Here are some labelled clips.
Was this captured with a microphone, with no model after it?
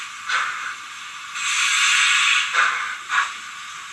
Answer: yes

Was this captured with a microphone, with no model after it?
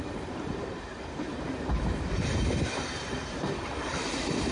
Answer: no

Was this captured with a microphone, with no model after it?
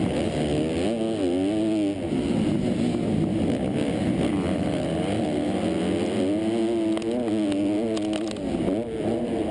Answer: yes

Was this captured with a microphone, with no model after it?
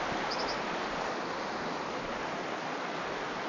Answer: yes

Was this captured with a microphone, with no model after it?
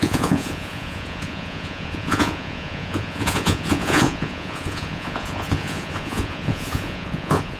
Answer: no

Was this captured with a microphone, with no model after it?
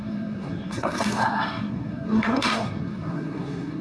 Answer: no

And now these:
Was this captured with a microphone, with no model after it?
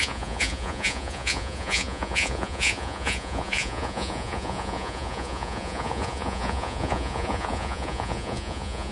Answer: no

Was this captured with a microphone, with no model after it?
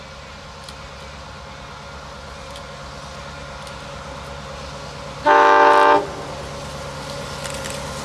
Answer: yes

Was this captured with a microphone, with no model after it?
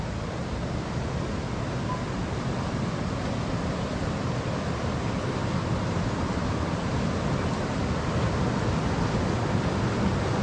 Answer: yes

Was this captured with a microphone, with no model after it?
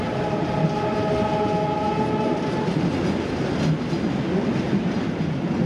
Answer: yes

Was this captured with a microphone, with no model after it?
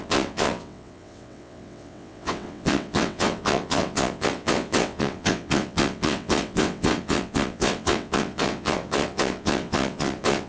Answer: no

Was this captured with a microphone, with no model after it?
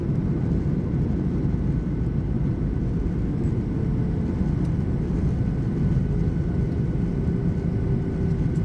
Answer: yes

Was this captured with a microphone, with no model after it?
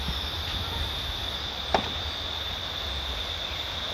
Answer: yes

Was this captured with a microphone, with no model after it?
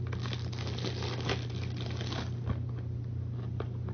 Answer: yes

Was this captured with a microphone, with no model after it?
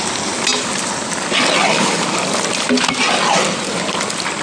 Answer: yes